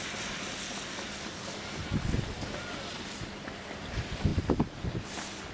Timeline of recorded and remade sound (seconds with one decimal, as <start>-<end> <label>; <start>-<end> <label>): 0.0-5.5 recorded